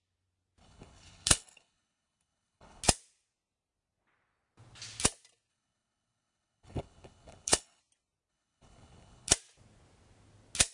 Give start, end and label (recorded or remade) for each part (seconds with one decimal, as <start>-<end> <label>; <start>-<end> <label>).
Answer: 0.0-0.6 recorded; 0.6-2.8 remade; 2.8-5.5 recorded; 5.5-7.8 remade; 7.8-8.3 recorded; 8.3-9.3 remade; 9.3-10.7 recorded